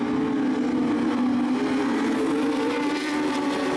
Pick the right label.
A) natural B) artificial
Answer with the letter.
A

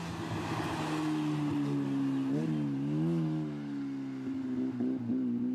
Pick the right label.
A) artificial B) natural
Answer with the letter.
B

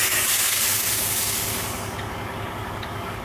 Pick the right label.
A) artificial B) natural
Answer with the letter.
A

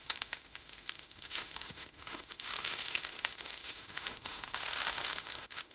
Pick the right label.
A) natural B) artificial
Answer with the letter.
B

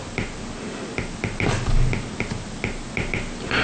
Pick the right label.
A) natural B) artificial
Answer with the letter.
A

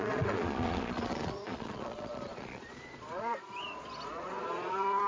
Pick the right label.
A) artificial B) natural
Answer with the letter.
A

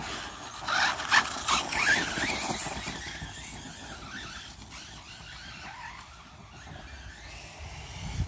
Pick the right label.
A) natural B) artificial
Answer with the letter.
A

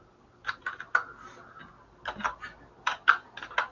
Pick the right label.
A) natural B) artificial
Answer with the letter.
A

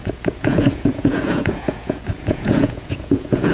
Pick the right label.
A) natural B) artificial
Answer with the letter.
B